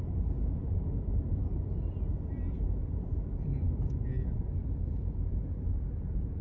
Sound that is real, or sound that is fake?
real